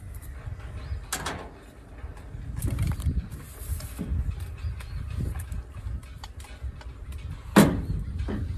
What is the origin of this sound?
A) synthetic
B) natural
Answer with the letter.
B